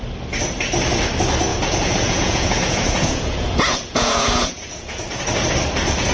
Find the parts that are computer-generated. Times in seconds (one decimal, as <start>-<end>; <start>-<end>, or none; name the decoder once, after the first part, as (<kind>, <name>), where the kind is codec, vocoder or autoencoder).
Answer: 1.5-5.2 (vocoder, Vocos)